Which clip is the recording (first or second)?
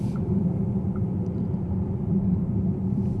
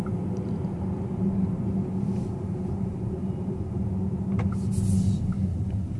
second